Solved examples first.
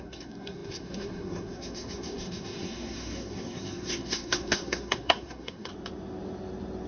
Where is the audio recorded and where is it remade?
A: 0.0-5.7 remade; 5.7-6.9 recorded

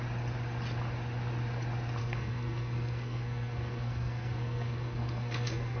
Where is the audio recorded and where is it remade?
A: 0.0-2.0 recorded; 2.0-5.8 remade

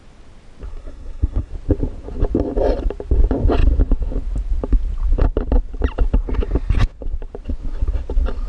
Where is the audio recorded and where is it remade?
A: 0.0-0.7 recorded; 0.7-1.5 remade; 1.5-8.5 recorded

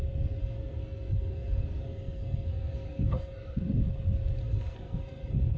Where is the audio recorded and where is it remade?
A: 0.0-0.4 recorded; 0.4-3.6 remade; 3.6-4.4 recorded; 4.4-5.6 remade

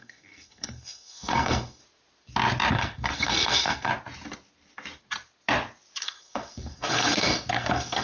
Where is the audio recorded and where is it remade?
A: 0.0-1.8 remade; 1.8-2.7 recorded; 2.7-3.9 remade; 3.9-6.0 recorded; 6.0-8.0 remade

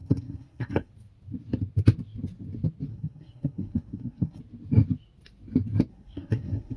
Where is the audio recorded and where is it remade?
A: 0.0-0.9 remade; 0.9-2.9 recorded; 2.9-4.4 remade; 4.4-5.9 recorded; 5.9-6.8 remade